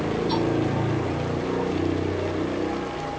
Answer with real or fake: real